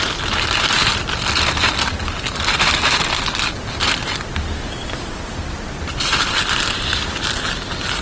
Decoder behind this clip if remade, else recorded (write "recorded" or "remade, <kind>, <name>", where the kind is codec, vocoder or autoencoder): recorded